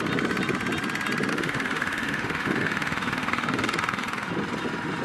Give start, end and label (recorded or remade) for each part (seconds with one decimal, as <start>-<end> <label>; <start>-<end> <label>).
0.0-1.3 recorded; 1.3-4.3 remade; 4.3-5.0 recorded